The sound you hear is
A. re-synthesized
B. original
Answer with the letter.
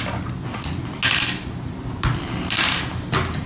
B